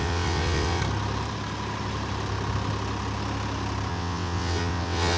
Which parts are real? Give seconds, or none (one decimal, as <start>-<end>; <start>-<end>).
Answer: 0.8-3.9